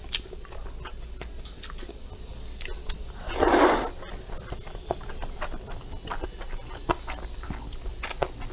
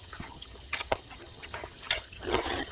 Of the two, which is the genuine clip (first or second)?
first